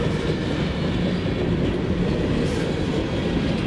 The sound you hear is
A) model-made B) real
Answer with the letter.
B